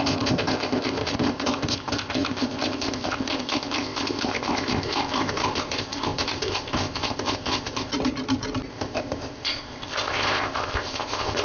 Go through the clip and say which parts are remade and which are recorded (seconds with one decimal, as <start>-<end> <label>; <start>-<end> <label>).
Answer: 0.0-7.9 remade; 7.9-8.7 recorded; 8.7-11.4 remade